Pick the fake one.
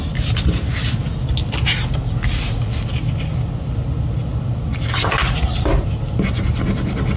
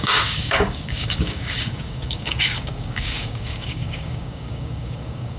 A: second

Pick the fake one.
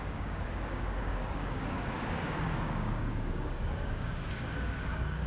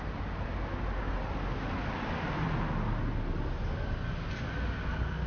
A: first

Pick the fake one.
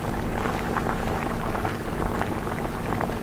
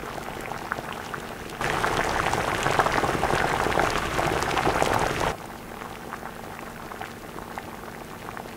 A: first